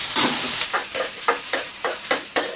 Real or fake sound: fake